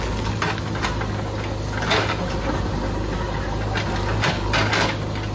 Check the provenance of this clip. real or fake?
real